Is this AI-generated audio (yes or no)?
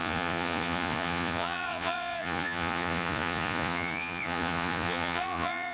yes